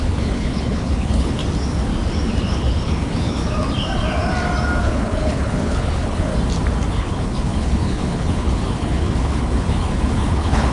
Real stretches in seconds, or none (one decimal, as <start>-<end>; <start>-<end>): 1.4-2.4; 3.4-4.8; 6.3-6.9